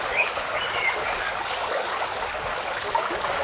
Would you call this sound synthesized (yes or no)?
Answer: yes